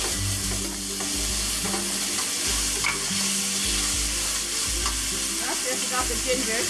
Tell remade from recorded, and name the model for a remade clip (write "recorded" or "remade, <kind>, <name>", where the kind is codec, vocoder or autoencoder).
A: recorded